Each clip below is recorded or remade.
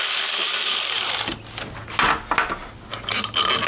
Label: recorded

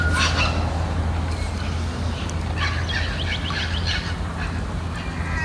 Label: recorded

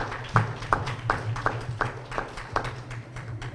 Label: recorded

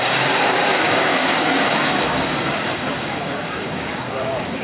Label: remade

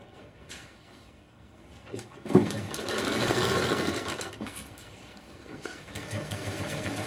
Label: remade